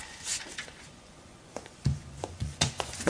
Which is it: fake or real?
fake